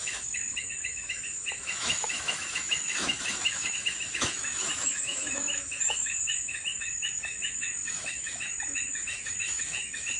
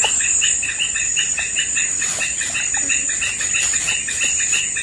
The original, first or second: second